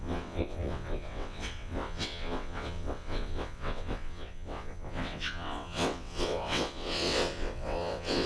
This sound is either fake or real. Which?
fake